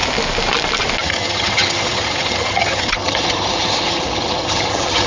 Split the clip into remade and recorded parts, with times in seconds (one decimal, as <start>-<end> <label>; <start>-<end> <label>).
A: 0.0-1.0 recorded; 1.0-5.1 remade